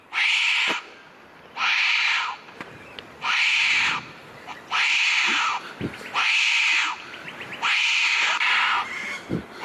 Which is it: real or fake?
fake